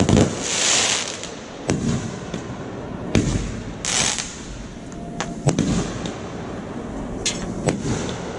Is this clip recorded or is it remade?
recorded